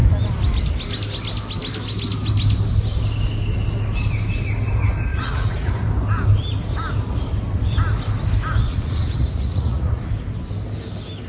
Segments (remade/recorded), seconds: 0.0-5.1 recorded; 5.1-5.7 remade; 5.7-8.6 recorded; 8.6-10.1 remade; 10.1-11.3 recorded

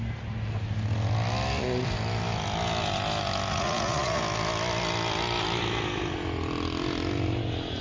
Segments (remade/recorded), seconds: 0.0-3.5 recorded; 3.5-4.2 remade; 4.2-7.8 recorded

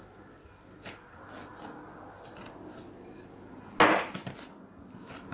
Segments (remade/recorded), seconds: 0.0-5.3 recorded

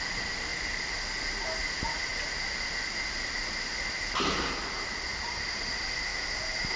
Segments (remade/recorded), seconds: 0.0-0.5 remade; 0.5-1.6 recorded; 1.6-2.1 remade; 2.1-5.4 recorded; 5.4-6.1 remade; 6.1-6.8 recorded

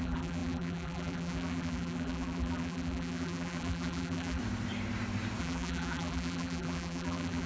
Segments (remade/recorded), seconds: 0.0-4.4 remade; 4.4-5.4 recorded; 5.4-7.5 remade

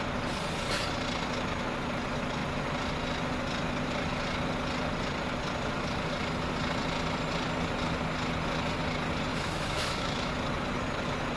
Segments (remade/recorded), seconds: 0.0-9.3 recorded; 9.3-10.3 remade; 10.3-11.4 recorded

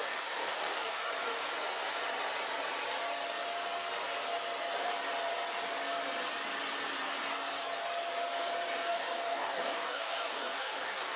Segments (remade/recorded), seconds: 0.0-1.1 remade; 1.1-8.9 recorded; 8.9-11.2 remade

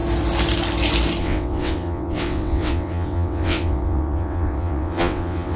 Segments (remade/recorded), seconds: 0.0-1.2 recorded; 1.2-5.6 remade